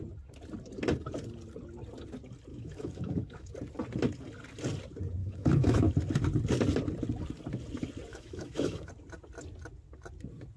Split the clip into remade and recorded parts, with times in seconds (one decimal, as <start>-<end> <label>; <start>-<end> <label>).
0.0-2.5 recorded; 2.5-3.5 remade; 3.5-5.2 recorded; 5.2-5.8 remade; 5.8-8.1 recorded; 8.1-8.9 remade; 8.9-10.6 recorded